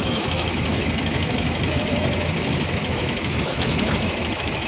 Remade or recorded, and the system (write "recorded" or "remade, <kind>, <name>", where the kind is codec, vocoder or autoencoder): remade, autoencoder, DAC-VAE